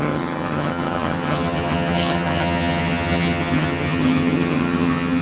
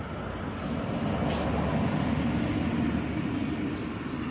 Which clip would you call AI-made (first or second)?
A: first